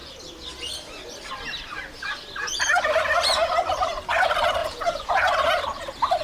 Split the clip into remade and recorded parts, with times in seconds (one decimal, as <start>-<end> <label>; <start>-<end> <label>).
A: 0.0-4.6 recorded; 4.6-5.1 remade; 5.1-6.2 recorded